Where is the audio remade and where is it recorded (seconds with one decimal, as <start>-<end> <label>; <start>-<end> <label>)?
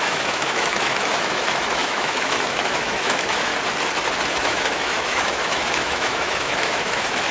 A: 0.0-3.5 remade; 3.5-4.3 recorded; 4.3-7.3 remade